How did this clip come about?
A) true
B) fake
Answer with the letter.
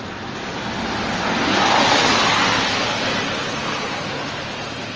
A